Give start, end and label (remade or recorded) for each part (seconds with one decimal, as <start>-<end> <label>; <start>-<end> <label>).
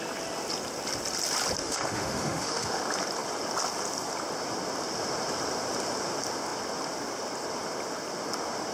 0.0-1.6 recorded; 1.6-2.8 remade; 2.8-8.7 recorded